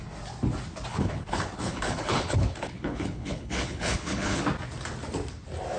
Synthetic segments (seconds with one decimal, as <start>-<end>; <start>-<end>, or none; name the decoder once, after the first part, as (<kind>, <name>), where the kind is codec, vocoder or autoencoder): 0.9-4.4 (codec, HILCodec)